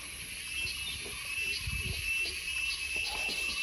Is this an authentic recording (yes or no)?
yes